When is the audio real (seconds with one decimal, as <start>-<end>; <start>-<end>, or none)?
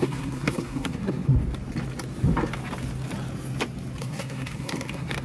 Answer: 1.4-4.0